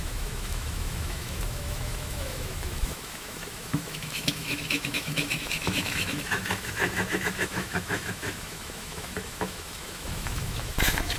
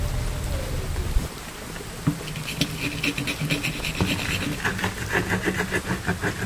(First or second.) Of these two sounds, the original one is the second